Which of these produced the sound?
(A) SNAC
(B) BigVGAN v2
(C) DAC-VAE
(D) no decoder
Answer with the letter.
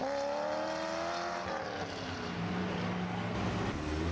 D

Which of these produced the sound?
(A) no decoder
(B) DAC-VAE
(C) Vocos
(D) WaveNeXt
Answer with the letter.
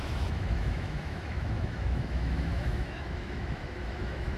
B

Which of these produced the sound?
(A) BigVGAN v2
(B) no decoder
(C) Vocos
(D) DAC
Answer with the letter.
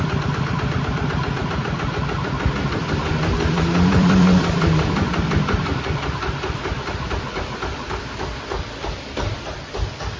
A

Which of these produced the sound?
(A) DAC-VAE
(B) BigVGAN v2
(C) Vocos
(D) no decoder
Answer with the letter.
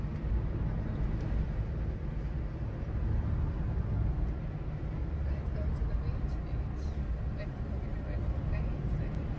D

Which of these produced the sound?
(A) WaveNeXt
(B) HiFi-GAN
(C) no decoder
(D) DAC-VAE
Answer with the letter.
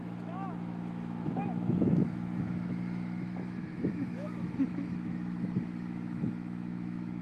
D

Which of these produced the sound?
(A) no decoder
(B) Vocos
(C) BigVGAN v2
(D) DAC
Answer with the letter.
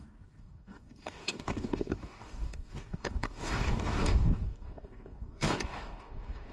D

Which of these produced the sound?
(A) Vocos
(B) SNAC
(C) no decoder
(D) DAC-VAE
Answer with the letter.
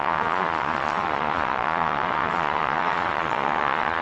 A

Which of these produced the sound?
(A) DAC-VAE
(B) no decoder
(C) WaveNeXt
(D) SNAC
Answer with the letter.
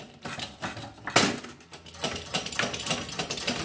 B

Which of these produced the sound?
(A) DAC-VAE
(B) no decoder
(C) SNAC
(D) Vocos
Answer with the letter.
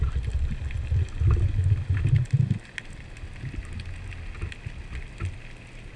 B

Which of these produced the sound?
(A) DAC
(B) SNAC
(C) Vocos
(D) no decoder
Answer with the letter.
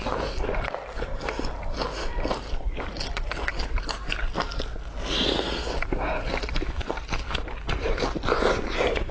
D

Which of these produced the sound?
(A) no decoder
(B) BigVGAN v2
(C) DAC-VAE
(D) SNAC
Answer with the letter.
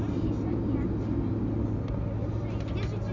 A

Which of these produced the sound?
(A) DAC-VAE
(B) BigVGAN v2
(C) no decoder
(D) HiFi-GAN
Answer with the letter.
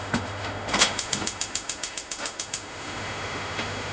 A